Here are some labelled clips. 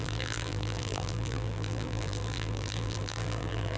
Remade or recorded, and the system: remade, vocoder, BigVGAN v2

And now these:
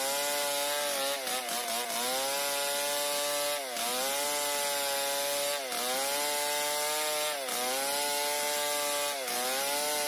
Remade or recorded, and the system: recorded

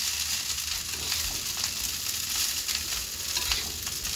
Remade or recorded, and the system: recorded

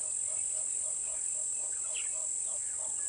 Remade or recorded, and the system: recorded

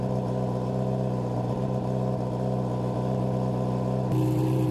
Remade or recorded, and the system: recorded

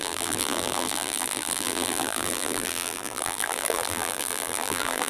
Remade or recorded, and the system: remade, vocoder, BigVGAN v2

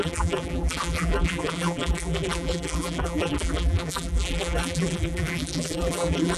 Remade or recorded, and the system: remade, vocoder, BigVGAN v2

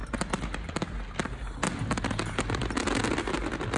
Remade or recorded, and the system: recorded